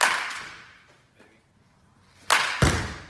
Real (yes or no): yes